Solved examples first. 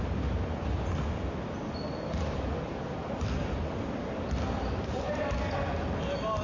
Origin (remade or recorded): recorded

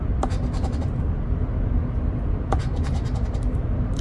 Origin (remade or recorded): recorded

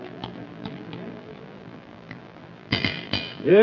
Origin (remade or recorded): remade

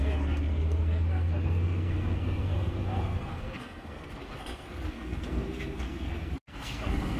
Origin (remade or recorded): remade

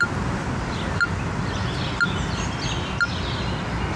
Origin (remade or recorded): recorded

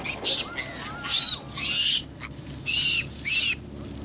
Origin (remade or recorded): recorded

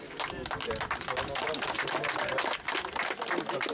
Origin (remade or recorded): recorded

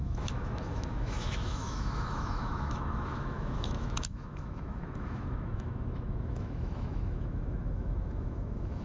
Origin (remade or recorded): remade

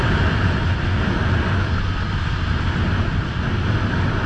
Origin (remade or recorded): recorded